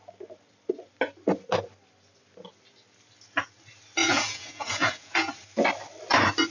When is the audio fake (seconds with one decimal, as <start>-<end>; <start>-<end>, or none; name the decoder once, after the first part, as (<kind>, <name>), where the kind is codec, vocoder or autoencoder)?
4.0-5.3 (vocoder, Vocos)